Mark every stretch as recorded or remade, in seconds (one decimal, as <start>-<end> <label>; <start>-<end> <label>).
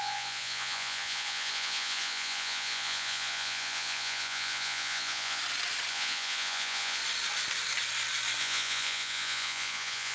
0.0-5.4 remade; 5.4-5.9 recorded; 5.9-7.0 remade; 7.0-8.4 recorded; 8.4-10.1 remade